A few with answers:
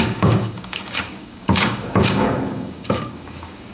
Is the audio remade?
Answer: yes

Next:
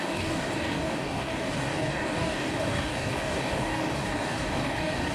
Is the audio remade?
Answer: yes